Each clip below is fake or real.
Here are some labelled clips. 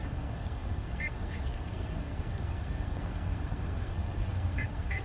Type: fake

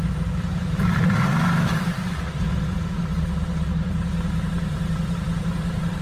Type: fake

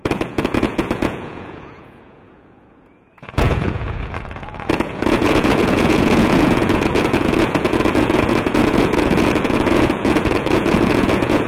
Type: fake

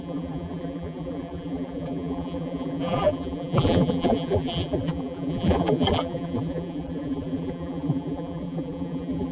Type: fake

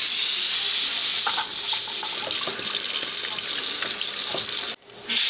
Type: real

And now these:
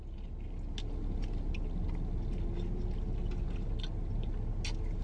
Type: real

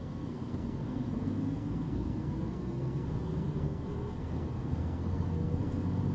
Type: fake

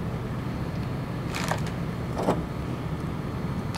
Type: real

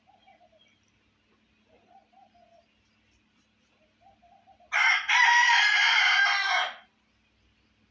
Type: real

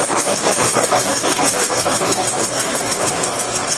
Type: fake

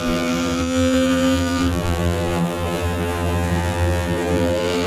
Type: fake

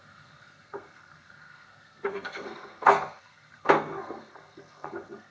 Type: fake